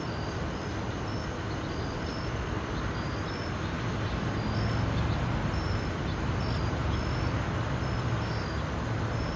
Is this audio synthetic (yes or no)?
no